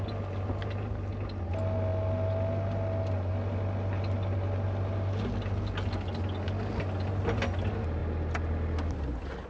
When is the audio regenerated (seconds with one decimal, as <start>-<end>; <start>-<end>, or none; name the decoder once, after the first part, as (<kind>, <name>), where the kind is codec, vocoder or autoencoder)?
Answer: none